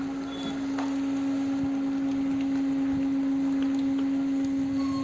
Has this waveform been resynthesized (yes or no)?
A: no